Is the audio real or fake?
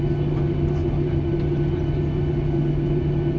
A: real